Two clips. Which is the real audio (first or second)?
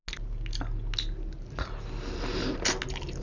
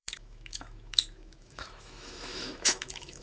first